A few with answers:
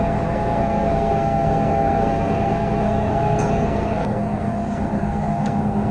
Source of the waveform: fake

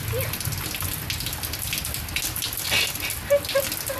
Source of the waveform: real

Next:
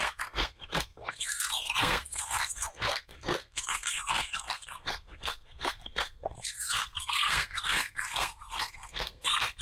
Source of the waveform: fake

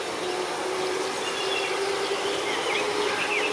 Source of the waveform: real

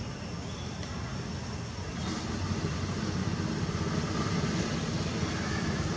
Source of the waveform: real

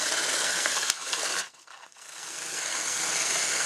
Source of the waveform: fake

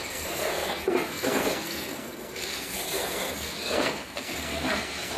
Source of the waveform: fake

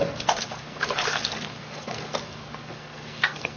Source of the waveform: fake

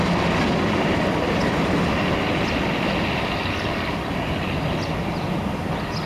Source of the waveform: real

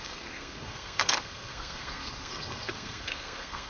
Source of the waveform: fake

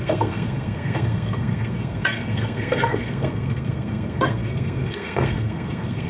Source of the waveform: fake